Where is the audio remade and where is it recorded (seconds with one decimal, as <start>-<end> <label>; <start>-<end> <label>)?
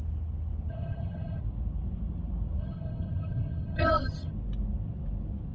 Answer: 0.0-0.7 recorded; 0.7-1.4 remade; 1.4-2.6 recorded; 2.6-4.3 remade; 4.3-5.5 recorded